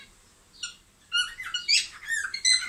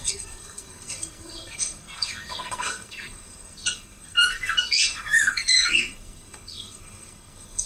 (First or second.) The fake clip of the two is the second